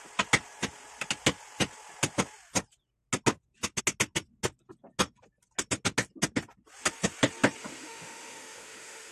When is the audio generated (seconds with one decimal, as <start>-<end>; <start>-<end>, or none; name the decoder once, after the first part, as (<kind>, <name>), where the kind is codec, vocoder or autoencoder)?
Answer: 7.6-9.1 (autoencoder, DAC-VAE)

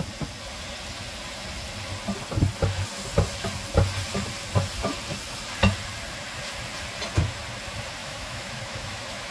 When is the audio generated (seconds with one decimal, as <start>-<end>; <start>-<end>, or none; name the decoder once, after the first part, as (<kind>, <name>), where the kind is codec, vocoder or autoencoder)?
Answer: 8.0-9.3 (autoencoder, DAC-VAE)

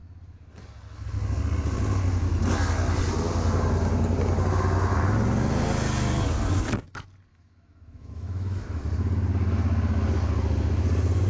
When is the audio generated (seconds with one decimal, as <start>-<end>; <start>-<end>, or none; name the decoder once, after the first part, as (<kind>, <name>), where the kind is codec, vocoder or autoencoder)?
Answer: 7.3-8.8 (autoencoder, DAC-VAE)

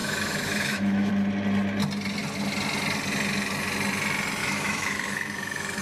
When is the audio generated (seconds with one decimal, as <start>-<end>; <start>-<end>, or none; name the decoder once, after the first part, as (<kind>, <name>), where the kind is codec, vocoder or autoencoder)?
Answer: 0.0-1.1 (autoencoder, DAC-VAE); 4.4-5.8

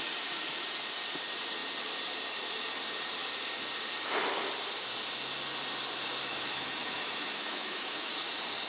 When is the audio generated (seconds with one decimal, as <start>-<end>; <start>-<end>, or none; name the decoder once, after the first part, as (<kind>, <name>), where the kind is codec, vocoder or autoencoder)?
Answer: 6.3-8.1 (autoencoder, DAC-VAE)